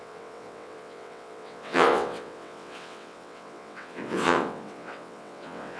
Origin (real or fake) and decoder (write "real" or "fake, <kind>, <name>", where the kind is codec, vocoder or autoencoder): fake, vocoder, WaveNeXt